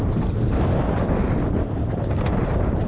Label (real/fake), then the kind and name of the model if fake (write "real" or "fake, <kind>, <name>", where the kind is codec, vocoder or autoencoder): fake, vocoder, BigVGAN v2